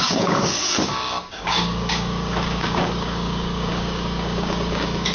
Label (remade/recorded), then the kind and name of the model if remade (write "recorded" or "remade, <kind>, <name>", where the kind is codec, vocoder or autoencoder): remade, codec, DAC